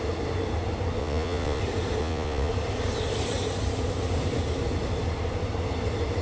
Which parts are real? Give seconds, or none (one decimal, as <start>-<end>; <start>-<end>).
0.0-1.0; 1.6-2.0; 2.5-6.2